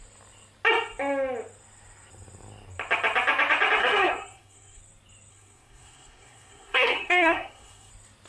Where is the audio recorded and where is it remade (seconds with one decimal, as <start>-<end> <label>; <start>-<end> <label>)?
0.0-3.8 recorded; 3.8-4.8 remade; 4.8-5.3 recorded; 5.3-7.9 remade; 7.9-8.3 recorded